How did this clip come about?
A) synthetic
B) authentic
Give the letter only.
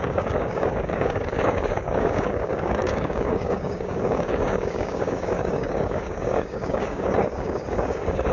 A